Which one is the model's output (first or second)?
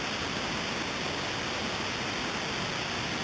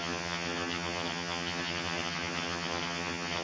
second